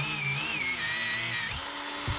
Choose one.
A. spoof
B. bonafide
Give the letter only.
B